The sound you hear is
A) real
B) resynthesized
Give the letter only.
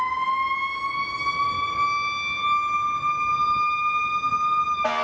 A